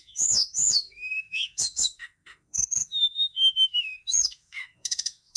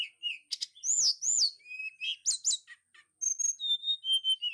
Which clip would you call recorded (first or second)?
second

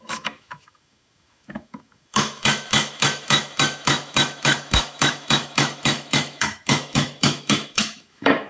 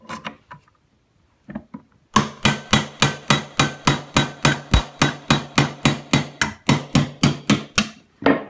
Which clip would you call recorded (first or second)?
second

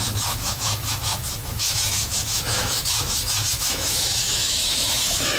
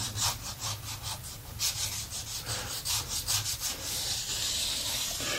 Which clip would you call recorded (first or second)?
second